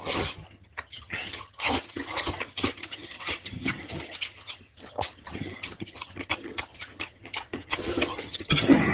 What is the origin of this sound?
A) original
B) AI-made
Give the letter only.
B